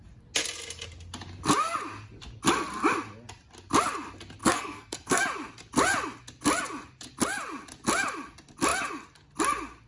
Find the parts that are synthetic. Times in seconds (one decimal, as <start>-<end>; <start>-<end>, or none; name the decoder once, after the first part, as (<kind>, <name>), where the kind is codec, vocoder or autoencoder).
4.4-5.2 (codec, SNAC)